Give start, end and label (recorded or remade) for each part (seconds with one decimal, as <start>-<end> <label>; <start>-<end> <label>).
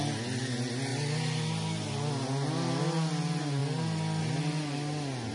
0.0-3.6 recorded; 3.6-4.2 remade; 4.2-5.3 recorded